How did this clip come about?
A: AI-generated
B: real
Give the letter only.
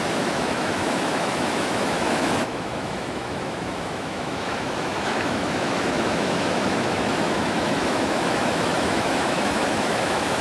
A